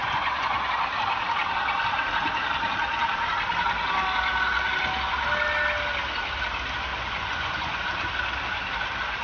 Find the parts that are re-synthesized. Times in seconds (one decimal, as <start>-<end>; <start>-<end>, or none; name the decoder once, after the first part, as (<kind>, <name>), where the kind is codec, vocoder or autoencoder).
0.0-0.7 (vocoder, Vocos); 6.9-7.8